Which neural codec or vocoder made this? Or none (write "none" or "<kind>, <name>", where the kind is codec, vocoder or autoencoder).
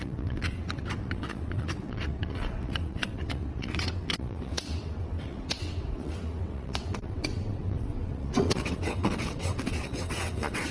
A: vocoder, WaveNeXt